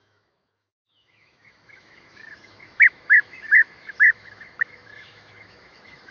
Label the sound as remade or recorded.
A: remade